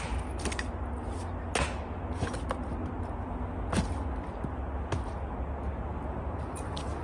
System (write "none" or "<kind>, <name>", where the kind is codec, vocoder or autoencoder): none